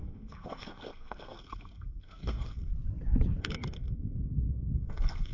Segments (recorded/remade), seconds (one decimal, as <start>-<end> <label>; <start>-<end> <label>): 0.0-2.7 remade; 2.7-3.4 recorded; 3.4-5.3 remade